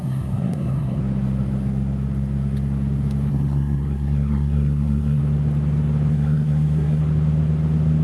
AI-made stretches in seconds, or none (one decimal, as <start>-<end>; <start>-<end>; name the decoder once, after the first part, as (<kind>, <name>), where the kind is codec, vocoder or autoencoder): 0.0-1.0 (codec, SNAC); 3.3-5.2; 6.1-7.0